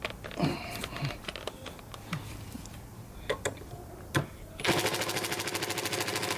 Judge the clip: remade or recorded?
recorded